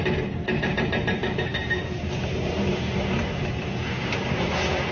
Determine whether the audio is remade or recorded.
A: recorded